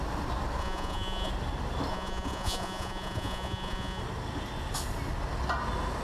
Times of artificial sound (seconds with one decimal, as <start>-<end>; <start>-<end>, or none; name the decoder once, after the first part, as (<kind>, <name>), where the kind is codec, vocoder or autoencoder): 0.6-1.3 (vocoder, Vocos); 1.9-4.0